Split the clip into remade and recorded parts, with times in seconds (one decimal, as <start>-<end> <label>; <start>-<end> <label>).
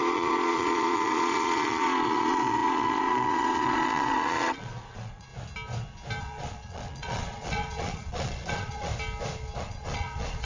0.0-5.3 remade; 5.3-6.2 recorded; 6.2-8.9 remade; 8.9-9.6 recorded; 9.6-10.5 remade